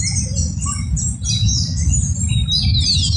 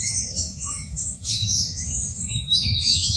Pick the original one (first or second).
first